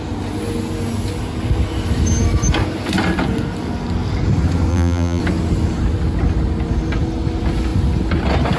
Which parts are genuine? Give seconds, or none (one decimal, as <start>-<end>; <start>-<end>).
0.0-4.7; 5.2-8.6

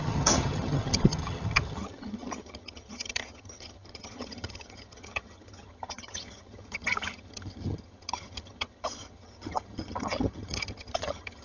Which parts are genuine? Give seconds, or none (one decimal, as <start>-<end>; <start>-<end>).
none

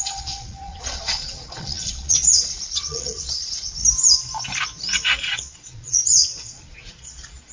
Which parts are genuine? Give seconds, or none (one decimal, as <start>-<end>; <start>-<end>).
3.8-5.2

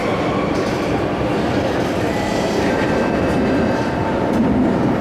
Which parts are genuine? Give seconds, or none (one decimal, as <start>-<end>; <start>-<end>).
0.0-2.0; 4.0-5.0

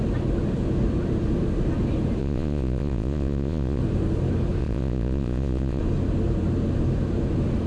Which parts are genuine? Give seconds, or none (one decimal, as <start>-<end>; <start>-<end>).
0.0-2.2; 3.8-4.6; 5.8-7.7

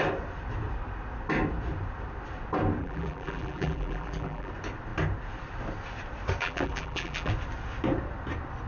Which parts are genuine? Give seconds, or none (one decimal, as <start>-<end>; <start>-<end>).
0.0-2.8; 4.5-6.4; 7.3-8.7

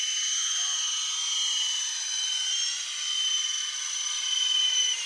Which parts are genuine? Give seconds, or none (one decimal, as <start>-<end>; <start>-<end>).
0.0-5.1